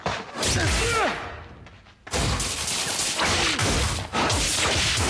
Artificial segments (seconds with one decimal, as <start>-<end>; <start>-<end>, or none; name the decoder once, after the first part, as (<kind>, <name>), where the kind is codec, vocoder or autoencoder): none